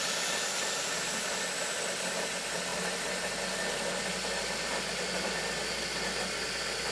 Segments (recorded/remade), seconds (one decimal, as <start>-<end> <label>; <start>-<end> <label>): 0.0-6.9 recorded